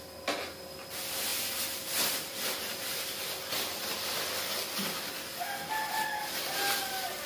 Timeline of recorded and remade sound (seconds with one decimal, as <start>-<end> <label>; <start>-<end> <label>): 0.0-7.3 recorded